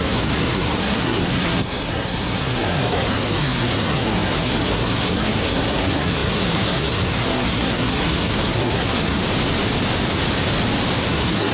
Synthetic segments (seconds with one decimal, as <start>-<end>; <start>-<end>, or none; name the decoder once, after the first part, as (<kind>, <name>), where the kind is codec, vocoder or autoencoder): 0.0-9.2 (codec, SNAC); 11.1-11.5